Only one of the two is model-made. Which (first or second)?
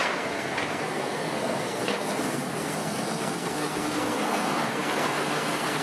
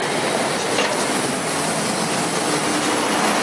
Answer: first